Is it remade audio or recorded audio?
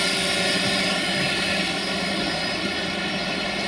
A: recorded